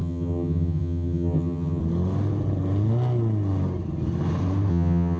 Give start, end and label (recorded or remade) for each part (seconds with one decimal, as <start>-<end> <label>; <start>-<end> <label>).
0.0-1.8 remade; 1.8-4.7 recorded; 4.7-5.2 remade